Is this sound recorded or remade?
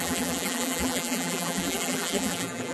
remade